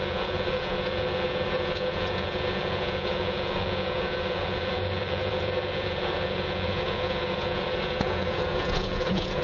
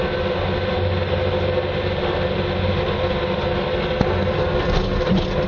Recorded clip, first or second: second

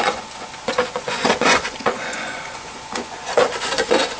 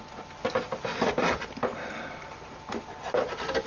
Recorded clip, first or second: second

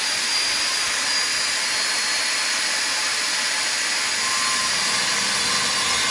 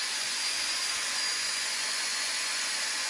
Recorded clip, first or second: first